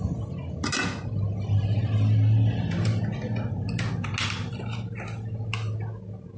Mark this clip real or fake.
real